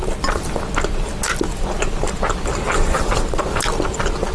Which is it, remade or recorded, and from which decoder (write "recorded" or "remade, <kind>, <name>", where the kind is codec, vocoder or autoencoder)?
recorded